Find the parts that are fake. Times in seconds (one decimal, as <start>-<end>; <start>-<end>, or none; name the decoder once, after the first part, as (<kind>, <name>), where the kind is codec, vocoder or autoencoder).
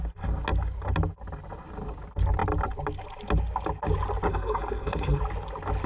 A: 4.3-5.2 (codec, SNAC)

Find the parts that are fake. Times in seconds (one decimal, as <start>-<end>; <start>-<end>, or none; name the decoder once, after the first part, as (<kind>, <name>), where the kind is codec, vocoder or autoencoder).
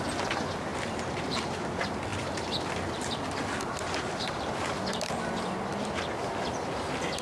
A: 0.7-1.5 (vocoder, BigVGAN v2); 2.1-3.2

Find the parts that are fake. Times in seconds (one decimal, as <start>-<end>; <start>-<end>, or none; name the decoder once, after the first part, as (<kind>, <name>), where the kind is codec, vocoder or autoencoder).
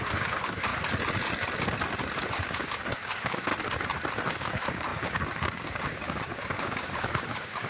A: 0.0-0.7 (codec, DAC); 2.3-3.5; 4.3-7.7